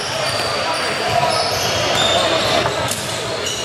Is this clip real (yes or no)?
yes